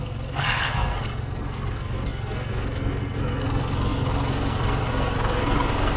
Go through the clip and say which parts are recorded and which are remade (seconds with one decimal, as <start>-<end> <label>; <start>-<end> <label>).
0.0-6.0 remade